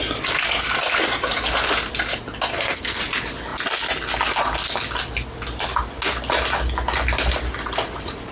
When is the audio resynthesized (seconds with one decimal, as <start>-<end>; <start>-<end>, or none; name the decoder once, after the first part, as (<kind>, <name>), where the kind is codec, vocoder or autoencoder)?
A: 2.5-3.0 (codec, SNAC)